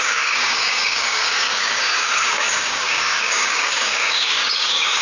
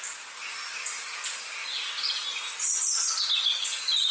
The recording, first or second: second